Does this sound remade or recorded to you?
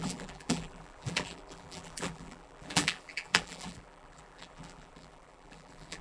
remade